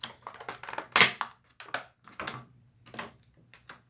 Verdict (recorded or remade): recorded